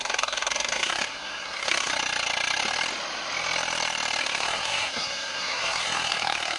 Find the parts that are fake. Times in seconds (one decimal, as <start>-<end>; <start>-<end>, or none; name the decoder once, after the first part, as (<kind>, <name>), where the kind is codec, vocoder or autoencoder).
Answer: 0.0-1.9 (codec, SNAC); 4.2-6.6

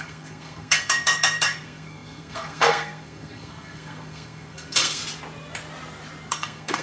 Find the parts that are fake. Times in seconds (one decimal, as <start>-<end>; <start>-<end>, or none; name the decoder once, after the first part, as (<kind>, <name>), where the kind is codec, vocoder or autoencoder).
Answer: 0.0-5.0 (codec, SNAC); 6.3-6.8

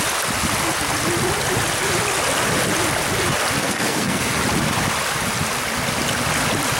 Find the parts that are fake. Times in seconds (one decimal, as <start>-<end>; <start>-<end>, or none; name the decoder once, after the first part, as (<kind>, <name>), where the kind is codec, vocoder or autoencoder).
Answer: 3.6-4.4 (codec, SNAC)

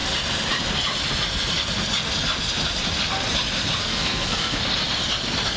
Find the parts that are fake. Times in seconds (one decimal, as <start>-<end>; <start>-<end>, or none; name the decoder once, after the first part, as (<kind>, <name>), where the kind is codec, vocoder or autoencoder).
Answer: 3.8-4.6 (codec, SNAC)

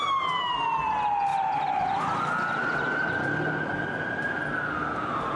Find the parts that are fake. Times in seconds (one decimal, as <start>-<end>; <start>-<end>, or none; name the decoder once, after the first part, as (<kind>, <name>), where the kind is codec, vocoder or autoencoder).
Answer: none